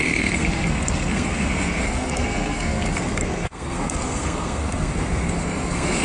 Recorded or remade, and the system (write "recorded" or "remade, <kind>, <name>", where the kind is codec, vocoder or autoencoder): remade, codec, SNAC